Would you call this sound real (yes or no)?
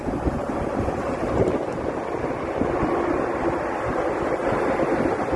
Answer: yes